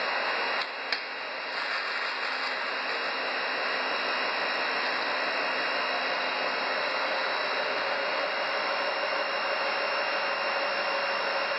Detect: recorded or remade recorded